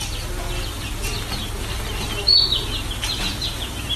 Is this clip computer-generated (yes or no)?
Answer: no